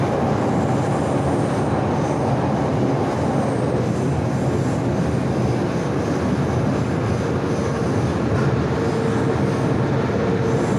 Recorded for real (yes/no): yes